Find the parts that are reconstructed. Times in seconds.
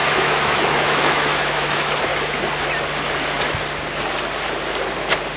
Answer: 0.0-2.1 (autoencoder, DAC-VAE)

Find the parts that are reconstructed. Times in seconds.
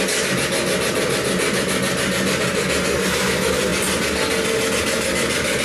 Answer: none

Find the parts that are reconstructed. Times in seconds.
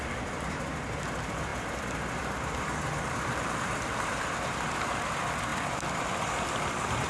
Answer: 0.0-1.5 (vocoder, BigVGAN v2); 2.1-7.1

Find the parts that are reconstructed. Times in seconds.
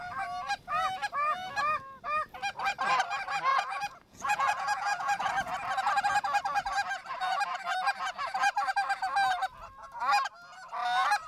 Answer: 3.5-5.3 (vocoder, Vocos)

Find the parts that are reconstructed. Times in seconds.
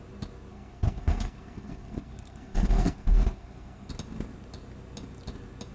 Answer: 0.5-3.9 (codec, SNAC)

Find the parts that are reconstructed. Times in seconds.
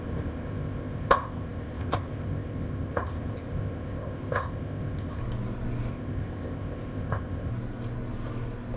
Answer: 0.0-5.2 (codec, ZipCodec); 5.9-7.5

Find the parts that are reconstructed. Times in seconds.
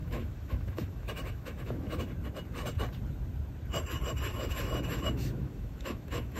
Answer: 0.0-2.1 (autoencoder, DAC-VAE); 4.3-6.4